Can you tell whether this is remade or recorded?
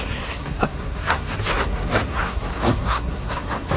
remade